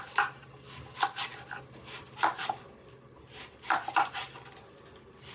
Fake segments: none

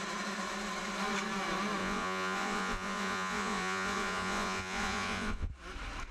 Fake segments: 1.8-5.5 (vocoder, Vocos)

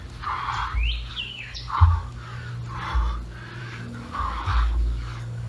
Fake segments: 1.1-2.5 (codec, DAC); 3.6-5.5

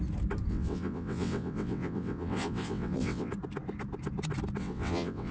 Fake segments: 0.5-3.3 (vocoder, WaveNeXt); 4.6-5.3